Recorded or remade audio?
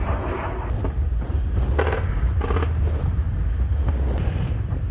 recorded